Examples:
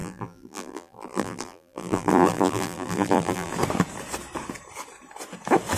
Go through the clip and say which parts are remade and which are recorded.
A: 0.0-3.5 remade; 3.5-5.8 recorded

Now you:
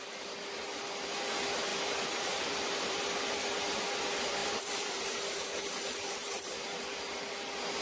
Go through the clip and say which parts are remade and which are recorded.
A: 0.0-1.7 recorded; 1.7-3.0 remade; 3.0-4.4 recorded; 4.4-5.7 remade; 5.7-6.2 recorded; 6.2-6.8 remade; 6.8-7.8 recorded

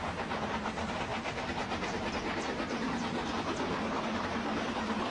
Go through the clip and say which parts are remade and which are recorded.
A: 0.0-5.1 recorded

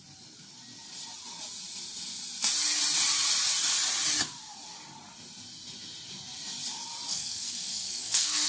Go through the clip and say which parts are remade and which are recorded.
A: 0.0-7.1 recorded; 7.1-8.5 remade

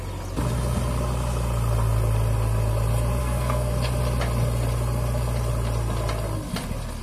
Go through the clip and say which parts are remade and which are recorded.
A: 0.0-3.2 recorded; 3.2-3.7 remade; 3.7-7.0 recorded

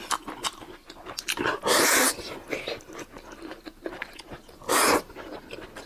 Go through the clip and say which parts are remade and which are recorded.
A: 0.0-5.9 recorded

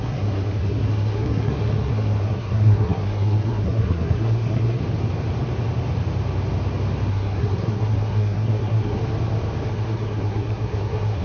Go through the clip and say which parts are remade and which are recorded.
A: 0.0-4.8 remade; 4.8-7.1 recorded; 7.1-9.0 remade; 9.0-9.7 recorded; 9.7-11.2 remade